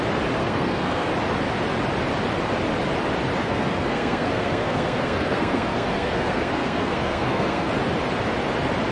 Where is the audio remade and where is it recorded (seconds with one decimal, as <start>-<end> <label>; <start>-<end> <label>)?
0.0-0.4 recorded; 0.4-1.1 remade; 1.1-3.4 recorded; 3.4-7.7 remade; 7.7-8.9 recorded

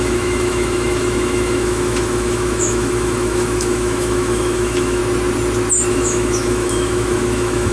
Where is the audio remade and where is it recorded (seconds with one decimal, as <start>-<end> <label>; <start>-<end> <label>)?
0.0-5.0 remade; 5.0-5.9 recorded; 5.9-7.7 remade

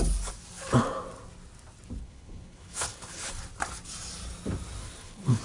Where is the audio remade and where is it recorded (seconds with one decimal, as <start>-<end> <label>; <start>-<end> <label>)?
0.0-2.0 recorded; 2.0-3.3 remade; 3.3-4.8 recorded; 4.8-5.4 remade

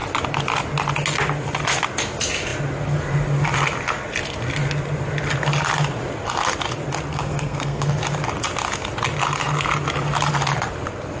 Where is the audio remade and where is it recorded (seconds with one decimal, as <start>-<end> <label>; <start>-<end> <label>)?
0.0-7.1 recorded; 7.1-7.9 remade; 7.9-11.2 recorded

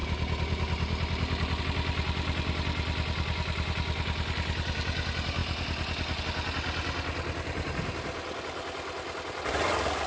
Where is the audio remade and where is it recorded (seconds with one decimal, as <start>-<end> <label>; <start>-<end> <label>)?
0.0-10.1 recorded

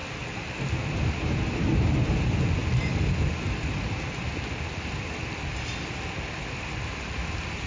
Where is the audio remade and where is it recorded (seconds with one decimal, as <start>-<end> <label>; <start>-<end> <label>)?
0.0-0.7 recorded; 0.7-7.7 remade